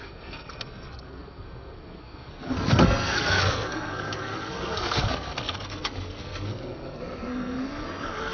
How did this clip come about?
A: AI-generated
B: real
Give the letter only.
A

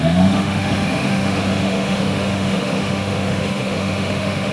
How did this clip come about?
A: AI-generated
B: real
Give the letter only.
A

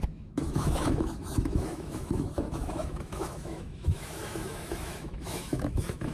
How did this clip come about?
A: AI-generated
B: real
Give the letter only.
A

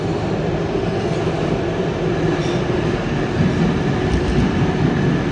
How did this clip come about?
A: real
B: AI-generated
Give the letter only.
A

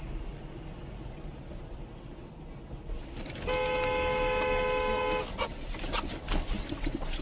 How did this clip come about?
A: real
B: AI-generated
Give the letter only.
A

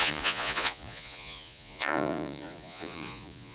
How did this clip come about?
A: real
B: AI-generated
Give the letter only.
B